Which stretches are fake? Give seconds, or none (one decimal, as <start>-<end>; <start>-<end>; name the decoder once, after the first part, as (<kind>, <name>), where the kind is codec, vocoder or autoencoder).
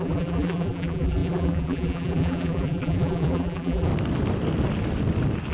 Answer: 0.0-3.9 (vocoder, BigVGAN v2)